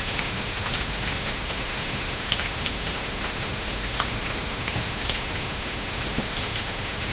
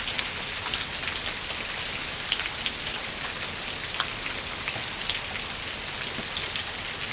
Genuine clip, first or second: second